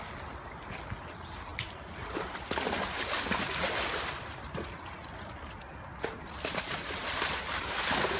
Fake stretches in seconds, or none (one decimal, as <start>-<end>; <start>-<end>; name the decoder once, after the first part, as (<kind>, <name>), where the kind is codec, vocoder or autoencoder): none

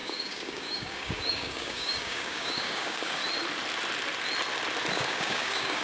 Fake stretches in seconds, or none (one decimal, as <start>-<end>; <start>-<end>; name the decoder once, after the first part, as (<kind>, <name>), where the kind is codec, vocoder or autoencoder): 0.0-3.2 (codec, DAC); 4.9-5.8

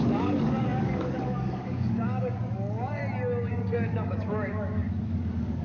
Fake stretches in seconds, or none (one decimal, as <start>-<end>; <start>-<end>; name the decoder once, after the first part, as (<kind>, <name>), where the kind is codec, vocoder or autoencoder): 0.0-3.0 (codec, DAC); 3.5-5.6

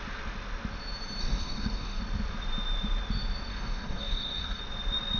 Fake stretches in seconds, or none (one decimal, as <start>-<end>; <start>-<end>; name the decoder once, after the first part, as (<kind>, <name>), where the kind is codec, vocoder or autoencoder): 1.2-2.0 (codec, DAC); 3.5-4.6

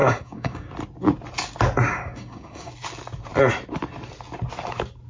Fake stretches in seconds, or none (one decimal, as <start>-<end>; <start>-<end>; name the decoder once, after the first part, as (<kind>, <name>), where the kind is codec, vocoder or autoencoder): 0.0-0.7 (codec, DAC); 1.9-2.7